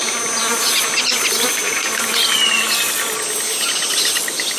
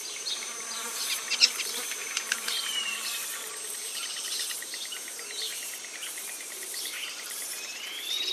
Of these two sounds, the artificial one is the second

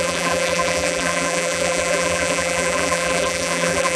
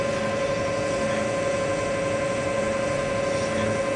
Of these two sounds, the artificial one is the first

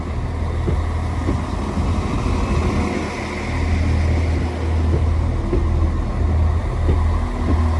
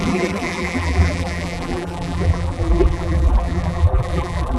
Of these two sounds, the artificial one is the second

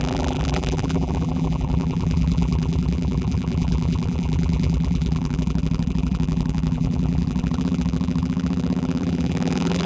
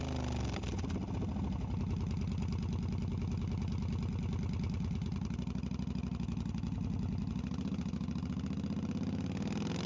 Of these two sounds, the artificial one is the first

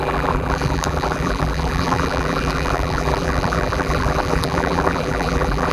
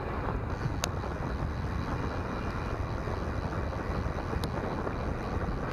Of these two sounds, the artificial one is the first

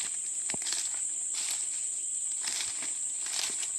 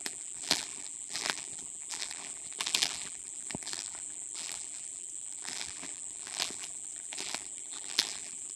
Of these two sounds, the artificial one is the second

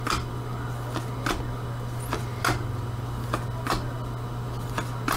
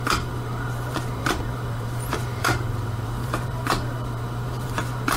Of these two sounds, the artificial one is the second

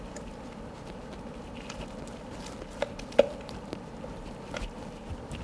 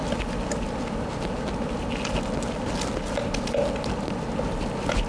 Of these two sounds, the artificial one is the first